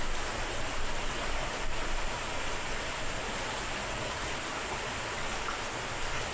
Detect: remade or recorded recorded